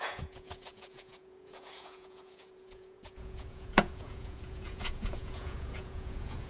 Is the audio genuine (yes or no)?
no